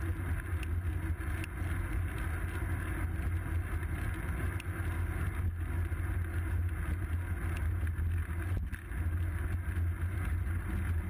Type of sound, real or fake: real